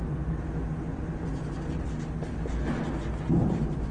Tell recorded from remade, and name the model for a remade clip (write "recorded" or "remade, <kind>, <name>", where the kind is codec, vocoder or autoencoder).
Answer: recorded